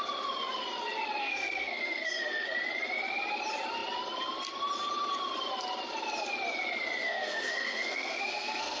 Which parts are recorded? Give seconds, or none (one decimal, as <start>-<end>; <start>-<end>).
0.0-1.2; 2.5-7.0

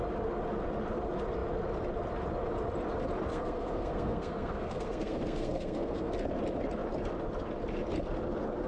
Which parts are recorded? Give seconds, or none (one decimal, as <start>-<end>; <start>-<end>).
0.0-3.3; 6.1-8.7

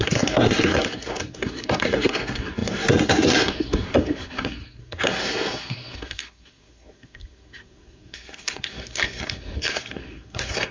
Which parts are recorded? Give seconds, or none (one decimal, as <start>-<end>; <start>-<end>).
none

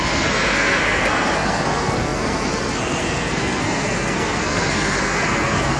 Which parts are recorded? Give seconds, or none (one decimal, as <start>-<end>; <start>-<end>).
none

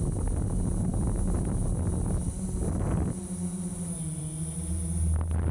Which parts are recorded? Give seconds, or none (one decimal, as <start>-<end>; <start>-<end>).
0.0-5.5

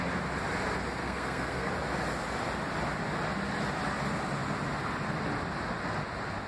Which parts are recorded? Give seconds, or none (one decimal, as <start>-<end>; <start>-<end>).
0.0-1.0; 1.7-6.5

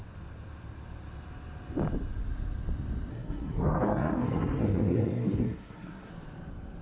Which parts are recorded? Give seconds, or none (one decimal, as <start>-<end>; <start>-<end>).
0.0-3.1; 6.1-6.8